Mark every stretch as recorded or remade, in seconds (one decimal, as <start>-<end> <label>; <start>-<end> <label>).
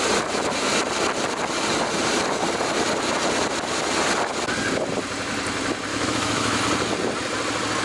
0.0-5.9 recorded; 5.9-6.6 remade; 6.6-7.8 recorded